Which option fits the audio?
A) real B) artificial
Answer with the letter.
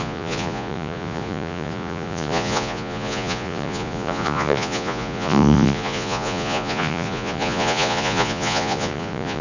B